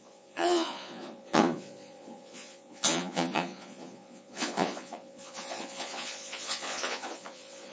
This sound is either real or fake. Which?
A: fake